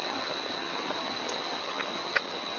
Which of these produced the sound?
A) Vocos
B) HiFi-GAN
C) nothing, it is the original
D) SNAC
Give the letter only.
B